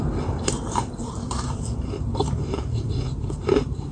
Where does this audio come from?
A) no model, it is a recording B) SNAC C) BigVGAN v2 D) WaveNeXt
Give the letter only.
C